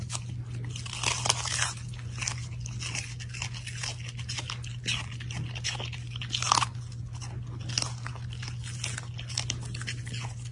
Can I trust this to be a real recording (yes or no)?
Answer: yes